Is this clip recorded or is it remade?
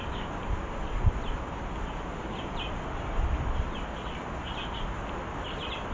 recorded